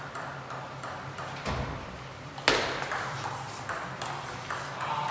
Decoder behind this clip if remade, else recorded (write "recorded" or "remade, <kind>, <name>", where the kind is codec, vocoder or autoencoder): recorded